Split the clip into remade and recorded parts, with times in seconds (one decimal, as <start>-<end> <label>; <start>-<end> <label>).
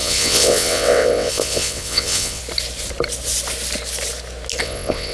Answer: 0.0-2.4 remade; 2.4-4.6 recorded; 4.6-5.1 remade